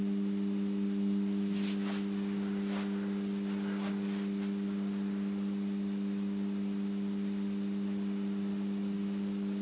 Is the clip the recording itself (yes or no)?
yes